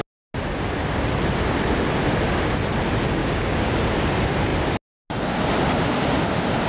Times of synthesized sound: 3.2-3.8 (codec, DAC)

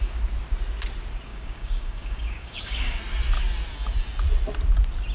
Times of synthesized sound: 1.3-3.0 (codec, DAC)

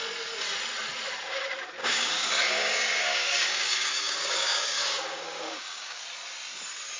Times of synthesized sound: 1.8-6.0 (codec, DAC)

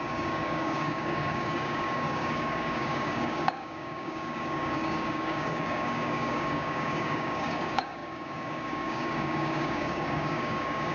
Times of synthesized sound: 0.0-10.9 (codec, DAC)

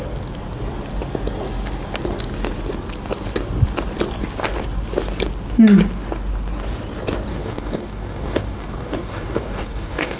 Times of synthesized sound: 7.3-10.2 (codec, DAC)